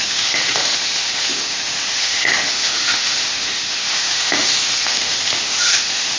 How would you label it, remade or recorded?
remade